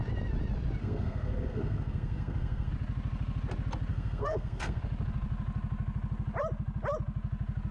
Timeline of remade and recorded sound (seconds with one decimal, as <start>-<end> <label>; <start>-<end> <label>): 0.0-0.8 recorded; 0.8-2.7 remade; 2.7-3.9 recorded; 3.9-4.8 remade; 4.8-7.7 recorded